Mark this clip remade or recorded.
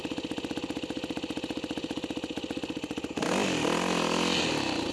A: recorded